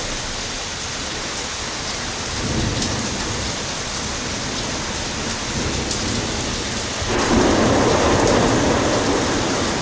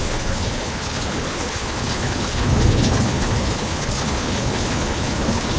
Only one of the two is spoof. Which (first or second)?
second